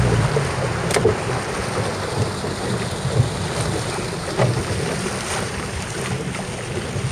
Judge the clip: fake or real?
real